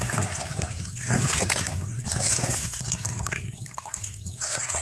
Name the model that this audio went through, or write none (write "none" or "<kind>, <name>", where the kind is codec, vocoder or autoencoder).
codec, SNAC